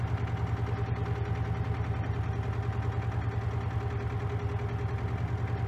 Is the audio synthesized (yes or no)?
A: no